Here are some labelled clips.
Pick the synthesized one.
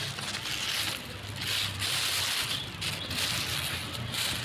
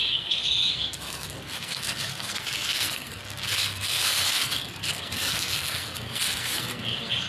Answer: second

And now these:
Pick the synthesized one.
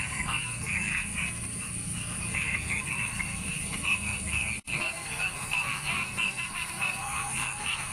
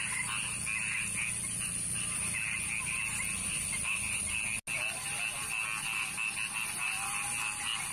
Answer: first